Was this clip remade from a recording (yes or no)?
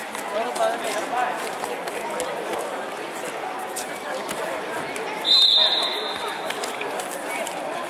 no